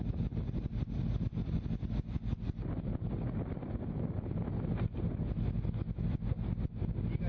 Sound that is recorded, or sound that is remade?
recorded